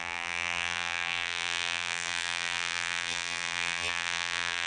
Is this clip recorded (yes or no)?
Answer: no